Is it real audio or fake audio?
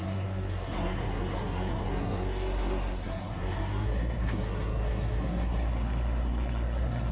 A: fake